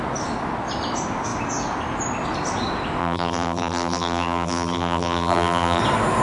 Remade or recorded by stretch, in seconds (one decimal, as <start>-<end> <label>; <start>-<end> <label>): 0.0-3.0 recorded; 3.0-5.8 remade; 5.8-6.2 recorded